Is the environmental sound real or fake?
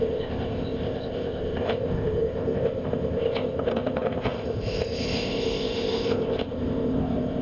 fake